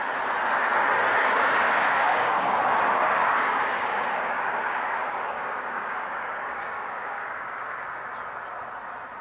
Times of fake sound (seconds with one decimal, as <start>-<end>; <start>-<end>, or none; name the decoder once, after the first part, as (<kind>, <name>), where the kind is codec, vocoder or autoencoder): 1.2-2.6 (codec, DAC); 3.2-7.8